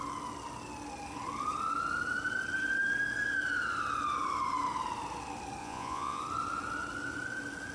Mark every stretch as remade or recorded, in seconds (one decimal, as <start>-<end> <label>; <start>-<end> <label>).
0.0-5.6 recorded; 5.6-6.2 remade; 6.2-7.7 recorded